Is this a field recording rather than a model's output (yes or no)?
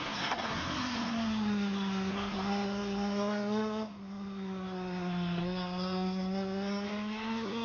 no